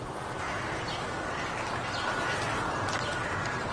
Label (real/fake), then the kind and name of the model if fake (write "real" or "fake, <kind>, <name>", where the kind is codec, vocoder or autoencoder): real